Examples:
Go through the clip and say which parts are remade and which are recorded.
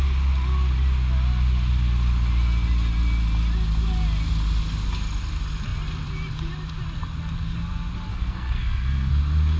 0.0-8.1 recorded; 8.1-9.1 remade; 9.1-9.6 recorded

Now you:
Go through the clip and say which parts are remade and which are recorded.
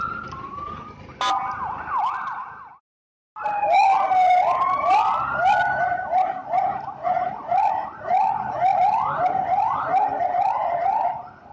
0.0-8.7 recorded; 8.7-11.1 remade; 11.1-11.5 recorded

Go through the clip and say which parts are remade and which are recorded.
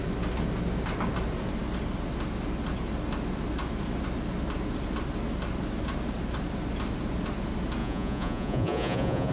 0.0-7.8 recorded; 7.8-9.3 remade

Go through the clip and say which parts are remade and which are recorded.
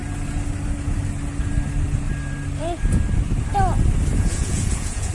0.0-4.1 recorded; 4.1-5.1 remade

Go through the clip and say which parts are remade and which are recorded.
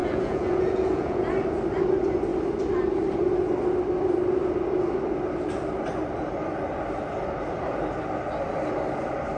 0.0-1.3 remade; 1.3-9.4 recorded